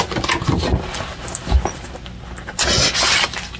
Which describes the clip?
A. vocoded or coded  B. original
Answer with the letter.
B